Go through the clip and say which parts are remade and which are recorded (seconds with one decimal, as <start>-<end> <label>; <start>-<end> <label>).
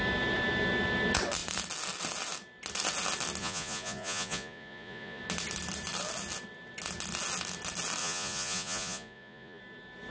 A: 0.0-3.4 recorded; 3.4-5.2 remade; 5.2-8.0 recorded; 8.0-9.6 remade; 9.6-10.1 recorded